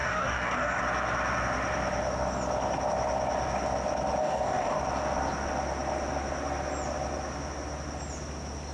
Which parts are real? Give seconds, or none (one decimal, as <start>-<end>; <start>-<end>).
0.8-4.2; 4.8-8.7